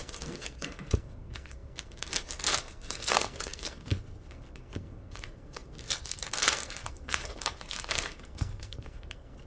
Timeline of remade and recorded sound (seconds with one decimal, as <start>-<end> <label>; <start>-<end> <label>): 0.0-9.5 remade